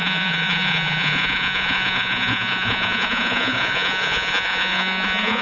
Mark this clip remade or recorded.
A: remade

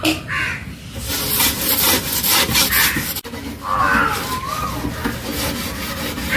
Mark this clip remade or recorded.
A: recorded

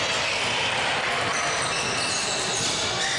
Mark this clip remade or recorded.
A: recorded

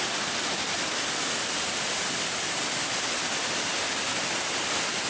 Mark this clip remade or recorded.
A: recorded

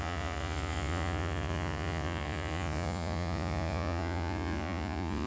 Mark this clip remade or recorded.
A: remade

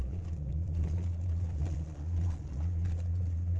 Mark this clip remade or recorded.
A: remade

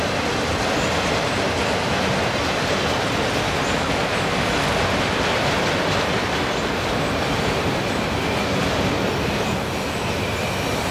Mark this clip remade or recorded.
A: recorded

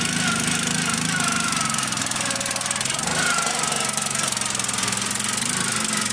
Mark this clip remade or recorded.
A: recorded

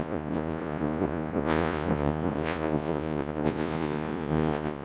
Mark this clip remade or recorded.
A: remade